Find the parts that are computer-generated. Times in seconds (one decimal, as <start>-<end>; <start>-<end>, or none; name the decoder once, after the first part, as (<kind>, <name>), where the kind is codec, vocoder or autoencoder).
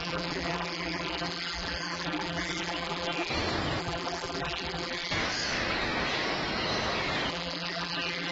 0.0-3.3 (vocoder, BigVGAN v2); 3.8-5.1; 7.3-8.3